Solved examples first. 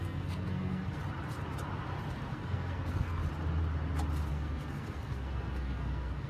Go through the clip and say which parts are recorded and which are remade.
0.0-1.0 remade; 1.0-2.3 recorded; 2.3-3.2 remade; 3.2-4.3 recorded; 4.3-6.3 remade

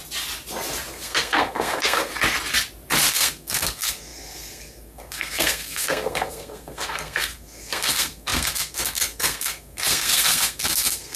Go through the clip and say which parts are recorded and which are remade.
0.0-0.9 recorded; 0.9-2.1 remade; 2.1-3.1 recorded; 3.1-11.2 remade

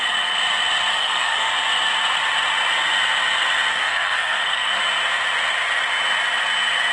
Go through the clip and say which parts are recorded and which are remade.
0.0-0.9 recorded; 0.9-1.5 remade; 1.5-3.7 recorded; 3.7-4.8 remade; 4.8-6.9 recorded

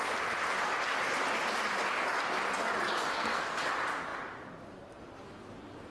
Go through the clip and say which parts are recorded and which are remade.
0.0-3.1 recorded; 3.1-3.6 remade; 3.6-5.9 recorded

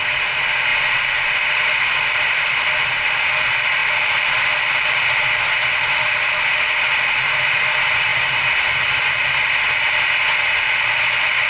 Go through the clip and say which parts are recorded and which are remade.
0.0-11.5 recorded

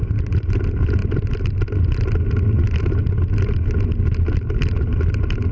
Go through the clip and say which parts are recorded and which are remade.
0.0-5.5 recorded

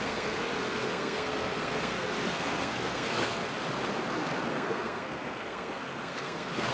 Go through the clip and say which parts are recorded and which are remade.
0.0-3.4 remade; 3.4-4.5 recorded; 4.5-6.7 remade

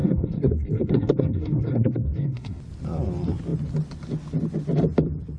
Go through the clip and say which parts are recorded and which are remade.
0.0-2.6 remade; 2.6-5.4 recorded